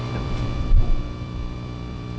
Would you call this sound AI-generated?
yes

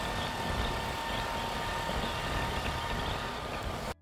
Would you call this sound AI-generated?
no